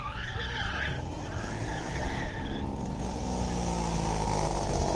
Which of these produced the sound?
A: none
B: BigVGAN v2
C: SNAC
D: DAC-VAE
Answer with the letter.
A